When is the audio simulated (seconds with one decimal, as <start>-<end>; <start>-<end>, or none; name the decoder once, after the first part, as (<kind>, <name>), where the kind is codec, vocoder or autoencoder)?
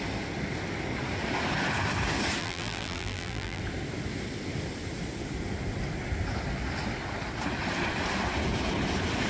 2.4-3.6 (vocoder, BigVGAN v2)